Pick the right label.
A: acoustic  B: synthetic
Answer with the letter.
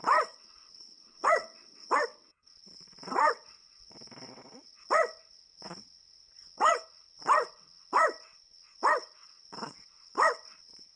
B